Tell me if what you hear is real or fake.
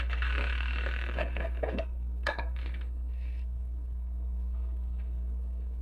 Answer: fake